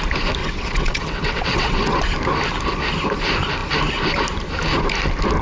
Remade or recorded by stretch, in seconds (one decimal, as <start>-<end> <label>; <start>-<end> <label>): 0.0-0.4 recorded; 0.4-2.0 remade; 2.0-5.4 recorded